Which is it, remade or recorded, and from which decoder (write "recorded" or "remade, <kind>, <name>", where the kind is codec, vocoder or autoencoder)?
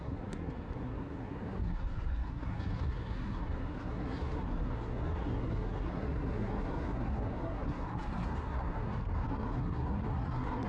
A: remade, codec, SNAC